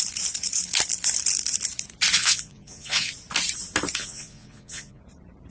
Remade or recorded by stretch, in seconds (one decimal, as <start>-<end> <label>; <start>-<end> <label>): 0.0-2.2 recorded; 2.2-3.1 remade; 3.1-4.0 recorded; 4.0-5.0 remade; 5.0-5.5 recorded

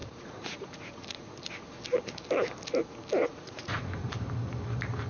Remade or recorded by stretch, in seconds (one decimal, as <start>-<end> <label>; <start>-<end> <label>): 0.0-1.5 remade; 1.5-3.2 recorded; 3.2-4.1 remade; 4.1-5.1 recorded

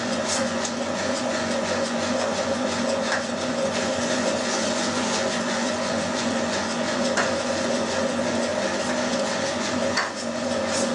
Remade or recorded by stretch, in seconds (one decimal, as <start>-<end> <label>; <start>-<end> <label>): 0.0-8.5 remade; 8.5-9.1 recorded; 9.1-10.9 remade